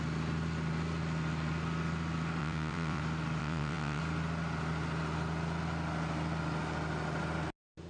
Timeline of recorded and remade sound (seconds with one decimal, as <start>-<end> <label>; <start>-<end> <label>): 0.0-2.4 recorded; 2.4-3.0 remade; 3.0-3.4 recorded; 3.4-4.0 remade; 4.0-7.9 recorded